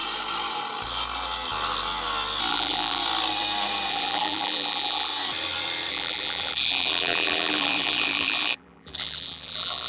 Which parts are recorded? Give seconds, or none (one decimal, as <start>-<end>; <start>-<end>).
0.0-2.5; 3.0-3.9; 5.1-5.9